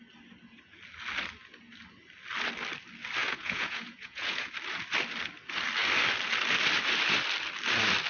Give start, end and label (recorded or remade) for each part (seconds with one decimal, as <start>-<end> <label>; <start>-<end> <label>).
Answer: 0.0-3.2 recorded; 3.2-4.5 remade; 4.5-8.1 recorded

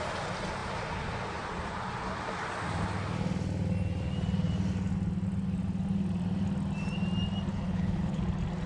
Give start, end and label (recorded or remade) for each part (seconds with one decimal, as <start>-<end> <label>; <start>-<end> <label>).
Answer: 0.0-7.5 recorded; 7.5-8.2 remade; 8.2-8.7 recorded

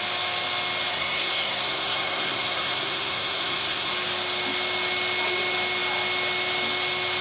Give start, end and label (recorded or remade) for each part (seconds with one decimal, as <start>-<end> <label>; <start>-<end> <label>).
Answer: 0.0-0.9 recorded; 0.9-3.9 remade; 3.9-7.2 recorded